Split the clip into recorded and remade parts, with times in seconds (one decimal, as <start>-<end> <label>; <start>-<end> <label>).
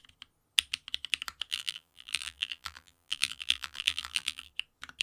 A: 0.0-1.5 recorded; 1.5-4.5 remade; 4.5-5.0 recorded